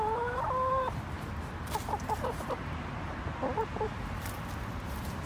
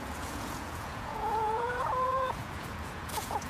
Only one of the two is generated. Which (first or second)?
second